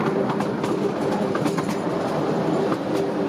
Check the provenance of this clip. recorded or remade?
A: recorded